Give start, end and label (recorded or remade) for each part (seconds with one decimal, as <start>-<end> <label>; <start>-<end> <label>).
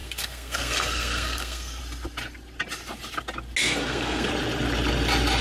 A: 0.0-1.8 remade; 1.8-3.6 recorded; 3.6-4.3 remade; 4.3-5.4 recorded